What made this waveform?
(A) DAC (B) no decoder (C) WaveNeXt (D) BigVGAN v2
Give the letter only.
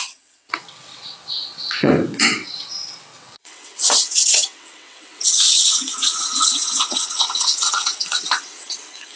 C